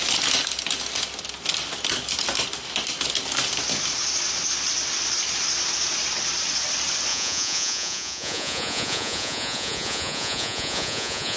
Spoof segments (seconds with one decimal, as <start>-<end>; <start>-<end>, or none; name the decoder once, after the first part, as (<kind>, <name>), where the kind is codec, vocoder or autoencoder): 7.1-11.4 (vocoder, Vocos)